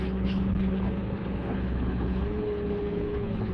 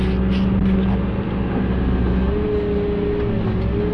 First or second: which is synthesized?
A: first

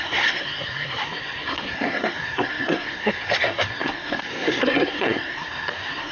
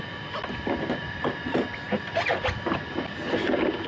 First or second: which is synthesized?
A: first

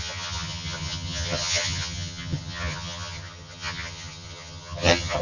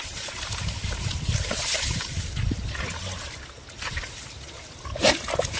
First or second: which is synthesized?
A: first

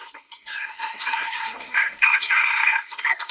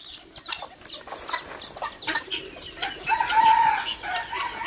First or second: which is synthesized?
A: first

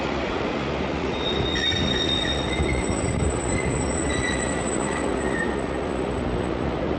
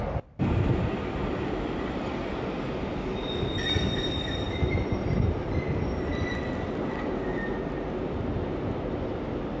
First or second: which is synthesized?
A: first